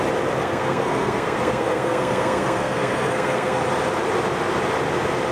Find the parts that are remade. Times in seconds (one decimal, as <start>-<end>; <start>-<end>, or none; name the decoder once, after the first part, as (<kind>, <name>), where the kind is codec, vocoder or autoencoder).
0.4-3.6 (codec, SNAC)